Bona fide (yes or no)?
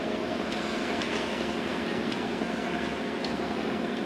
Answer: no